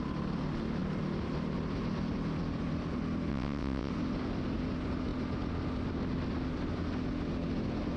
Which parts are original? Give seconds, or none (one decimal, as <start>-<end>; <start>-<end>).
0.0-3.3; 3.9-8.0